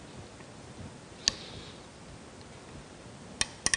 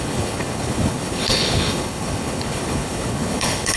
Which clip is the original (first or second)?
first